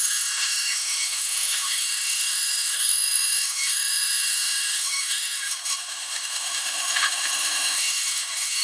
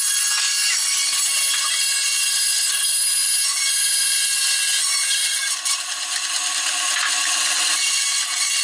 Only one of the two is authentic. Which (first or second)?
second